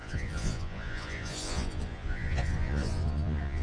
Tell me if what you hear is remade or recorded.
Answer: remade